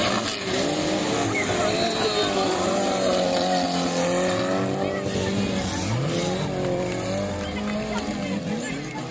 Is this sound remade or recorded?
recorded